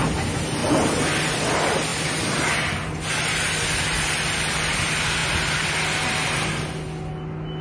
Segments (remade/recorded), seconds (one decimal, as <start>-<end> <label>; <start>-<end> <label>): 0.0-7.6 recorded